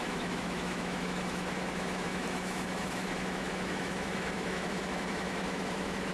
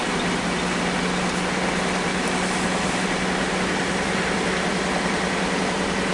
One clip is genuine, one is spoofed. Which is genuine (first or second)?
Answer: second